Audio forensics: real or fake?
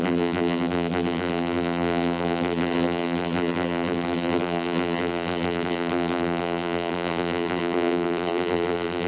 fake